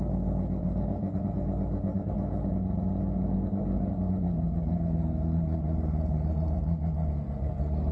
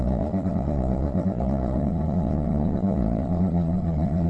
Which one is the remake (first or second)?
second